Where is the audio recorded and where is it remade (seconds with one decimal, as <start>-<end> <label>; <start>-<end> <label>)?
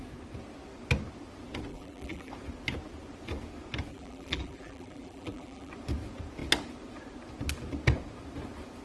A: 0.0-1.7 recorded; 1.7-2.3 remade; 2.3-3.9 recorded; 3.9-5.7 remade; 5.7-8.8 recorded